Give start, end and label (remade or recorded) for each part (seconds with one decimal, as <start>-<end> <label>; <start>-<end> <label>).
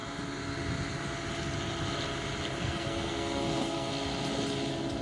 0.0-2.6 recorded; 2.6-3.9 remade; 3.9-5.0 recorded